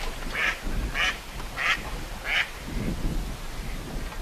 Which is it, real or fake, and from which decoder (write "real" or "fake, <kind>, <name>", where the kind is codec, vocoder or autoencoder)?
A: real